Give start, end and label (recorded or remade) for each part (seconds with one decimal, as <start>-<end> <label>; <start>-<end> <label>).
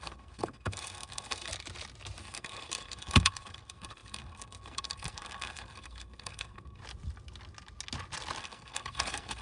0.0-1.5 remade; 1.5-2.2 recorded; 2.2-6.8 remade; 6.8-8.4 recorded; 8.4-9.4 remade